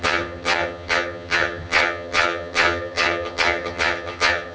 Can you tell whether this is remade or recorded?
remade